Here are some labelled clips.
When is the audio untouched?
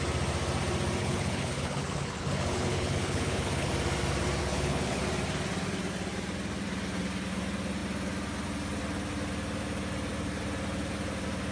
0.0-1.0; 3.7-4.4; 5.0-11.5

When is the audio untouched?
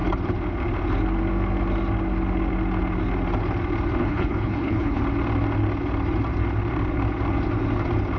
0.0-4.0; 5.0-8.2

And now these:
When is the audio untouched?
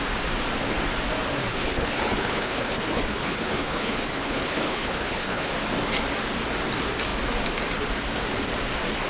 0.0-1.5; 5.5-9.1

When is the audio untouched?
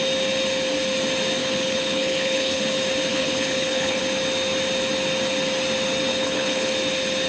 0.0-1.4; 2.6-3.1; 4.0-6.1; 6.7-7.3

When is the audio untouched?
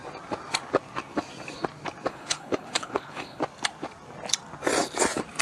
0.0-2.1; 3.4-5.4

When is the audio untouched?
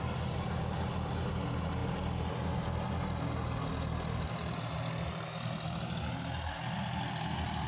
0.0-7.7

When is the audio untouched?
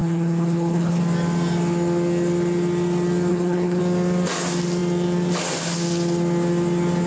1.0-3.3; 3.8-7.1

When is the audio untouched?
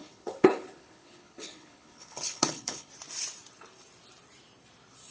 2.9-5.1